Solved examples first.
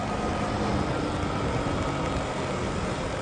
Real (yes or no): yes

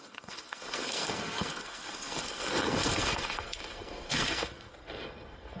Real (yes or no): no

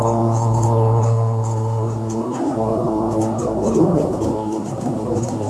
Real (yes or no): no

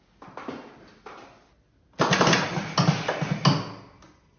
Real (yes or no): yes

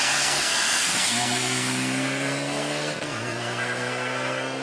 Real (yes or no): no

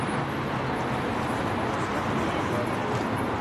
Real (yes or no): yes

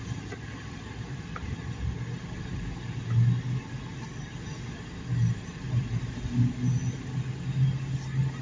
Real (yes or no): yes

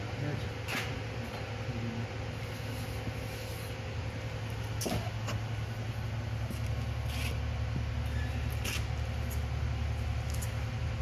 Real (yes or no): yes